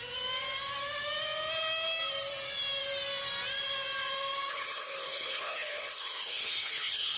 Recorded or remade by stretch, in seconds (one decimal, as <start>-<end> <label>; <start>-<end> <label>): 0.0-4.5 recorded; 4.5-7.2 remade